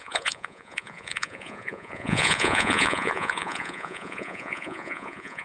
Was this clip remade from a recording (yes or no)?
yes